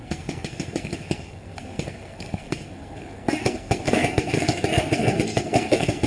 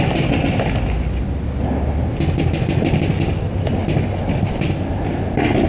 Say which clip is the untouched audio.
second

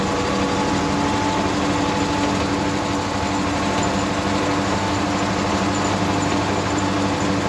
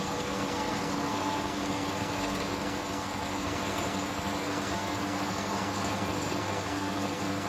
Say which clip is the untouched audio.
first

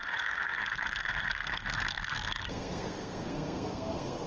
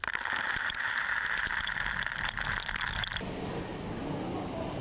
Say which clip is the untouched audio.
second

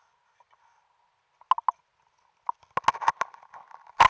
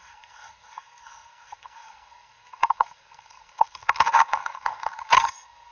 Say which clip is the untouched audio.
first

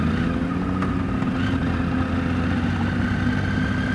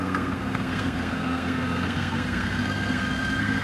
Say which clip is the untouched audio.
first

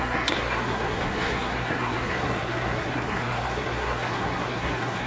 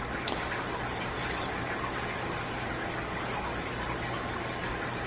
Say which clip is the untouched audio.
second